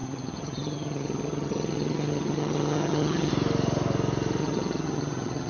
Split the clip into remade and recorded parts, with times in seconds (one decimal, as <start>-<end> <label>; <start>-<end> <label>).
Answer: 0.0-3.3 remade; 3.3-4.4 recorded; 4.4-5.5 remade